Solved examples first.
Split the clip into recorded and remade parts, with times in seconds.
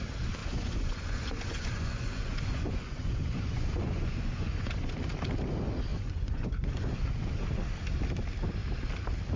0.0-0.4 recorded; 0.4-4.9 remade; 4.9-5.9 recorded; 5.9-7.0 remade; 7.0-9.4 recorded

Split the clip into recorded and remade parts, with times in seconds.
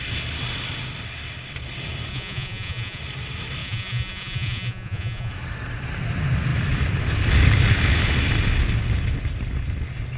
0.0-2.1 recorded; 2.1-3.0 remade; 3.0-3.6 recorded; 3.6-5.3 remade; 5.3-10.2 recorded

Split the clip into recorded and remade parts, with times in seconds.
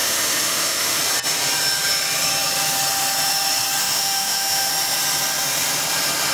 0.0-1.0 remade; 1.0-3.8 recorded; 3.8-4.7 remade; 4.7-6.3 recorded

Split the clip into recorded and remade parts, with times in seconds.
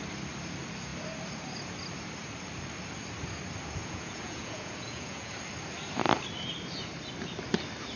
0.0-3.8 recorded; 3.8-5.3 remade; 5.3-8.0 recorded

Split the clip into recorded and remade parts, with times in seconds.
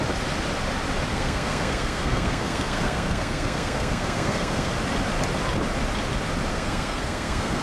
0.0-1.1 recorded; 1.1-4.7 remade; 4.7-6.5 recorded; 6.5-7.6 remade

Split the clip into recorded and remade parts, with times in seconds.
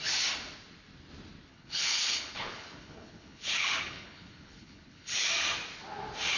0.0-1.5 recorded; 1.5-5.3 remade; 5.3-6.4 recorded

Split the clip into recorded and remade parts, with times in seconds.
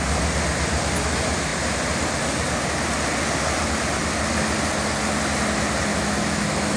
0.0-5.9 recorded; 5.9-6.8 remade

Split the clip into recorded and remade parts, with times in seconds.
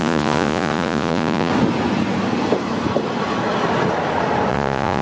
0.0-1.5 remade; 1.5-4.5 recorded; 4.5-5.0 remade